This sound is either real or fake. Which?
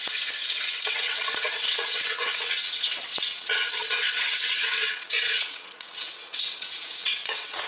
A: fake